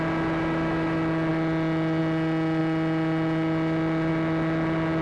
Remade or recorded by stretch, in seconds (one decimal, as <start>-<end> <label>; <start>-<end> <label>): 0.0-5.0 recorded